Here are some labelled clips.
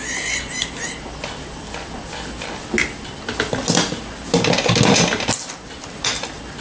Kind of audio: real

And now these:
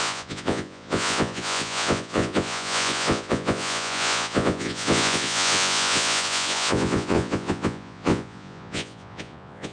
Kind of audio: fake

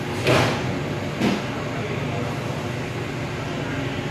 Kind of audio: real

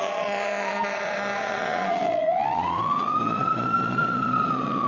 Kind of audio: fake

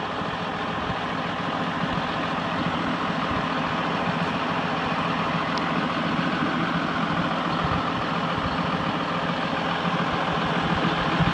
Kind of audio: real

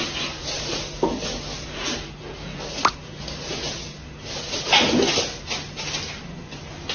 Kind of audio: real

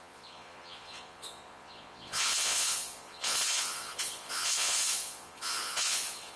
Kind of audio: fake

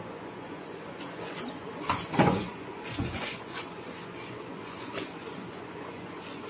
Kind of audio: fake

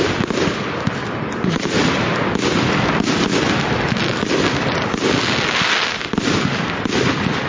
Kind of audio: real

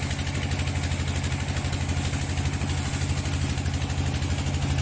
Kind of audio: real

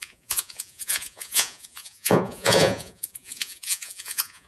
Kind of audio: fake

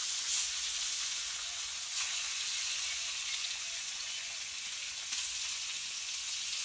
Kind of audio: fake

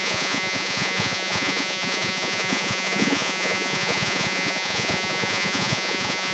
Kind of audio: fake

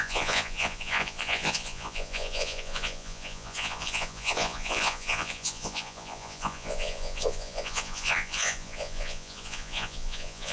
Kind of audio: fake